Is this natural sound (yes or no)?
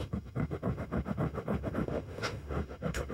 no